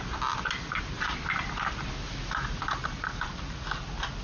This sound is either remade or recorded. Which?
recorded